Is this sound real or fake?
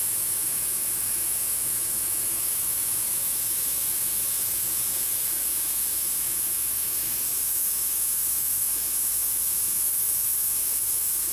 fake